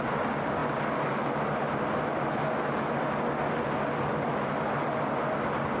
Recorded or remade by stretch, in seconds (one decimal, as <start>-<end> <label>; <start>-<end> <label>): 0.0-5.8 recorded